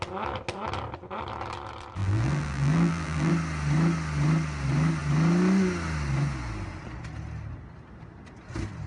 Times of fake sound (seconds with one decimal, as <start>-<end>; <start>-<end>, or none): 2.0-3.3